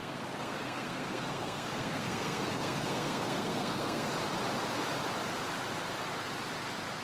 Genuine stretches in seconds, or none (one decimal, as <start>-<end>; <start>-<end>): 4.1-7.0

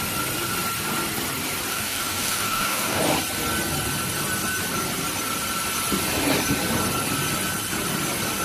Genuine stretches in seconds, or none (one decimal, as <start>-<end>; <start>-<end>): 0.0-1.7; 3.0-8.4

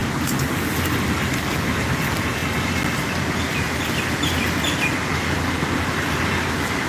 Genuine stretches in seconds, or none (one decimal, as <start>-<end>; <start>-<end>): 0.0-6.9

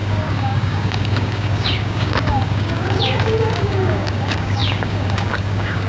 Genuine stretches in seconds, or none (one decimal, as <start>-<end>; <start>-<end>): none